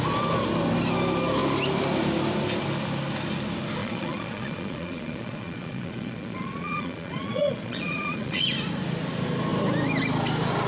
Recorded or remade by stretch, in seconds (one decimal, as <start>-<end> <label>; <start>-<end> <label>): 0.0-3.8 recorded; 3.8-8.4 remade; 8.4-10.7 recorded